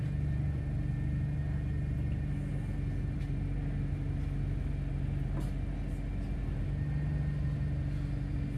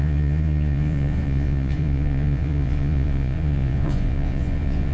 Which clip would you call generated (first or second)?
second